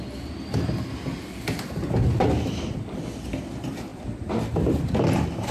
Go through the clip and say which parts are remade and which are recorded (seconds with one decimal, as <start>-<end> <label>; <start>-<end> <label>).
0.0-5.5 recorded